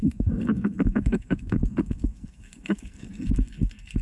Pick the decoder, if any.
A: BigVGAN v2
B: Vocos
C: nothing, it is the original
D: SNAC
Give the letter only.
D